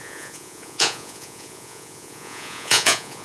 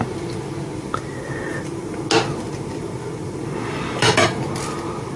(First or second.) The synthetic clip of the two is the first